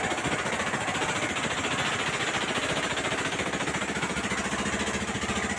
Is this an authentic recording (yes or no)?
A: yes